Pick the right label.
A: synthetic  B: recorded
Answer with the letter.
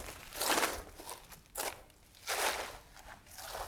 B